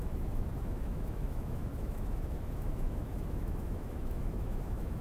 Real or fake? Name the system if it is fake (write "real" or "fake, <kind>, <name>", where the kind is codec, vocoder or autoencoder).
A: fake, autoencoder, DAC-VAE